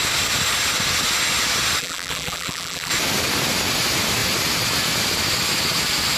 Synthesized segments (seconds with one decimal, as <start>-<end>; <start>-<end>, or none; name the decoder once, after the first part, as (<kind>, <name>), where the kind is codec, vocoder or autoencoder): 1.8-2.9 (vocoder, BigVGAN v2)